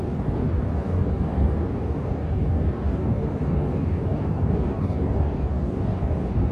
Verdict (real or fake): fake